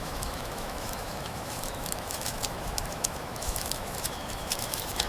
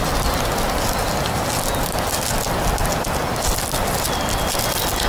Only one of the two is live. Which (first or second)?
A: second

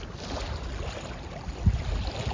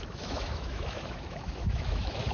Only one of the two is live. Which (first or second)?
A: first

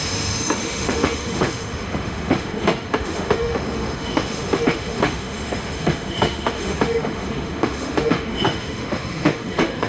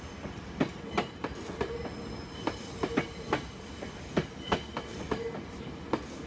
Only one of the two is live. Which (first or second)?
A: second